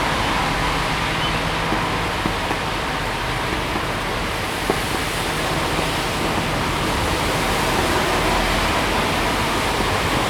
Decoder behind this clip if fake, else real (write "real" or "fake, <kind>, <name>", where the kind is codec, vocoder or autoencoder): real